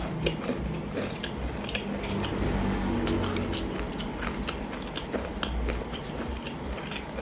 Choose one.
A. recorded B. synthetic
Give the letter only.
A